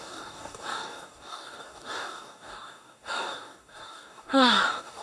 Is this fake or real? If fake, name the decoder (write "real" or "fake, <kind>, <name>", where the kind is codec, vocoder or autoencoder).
fake, codec, DAC